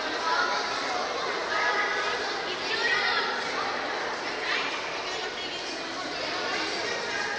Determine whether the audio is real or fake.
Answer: real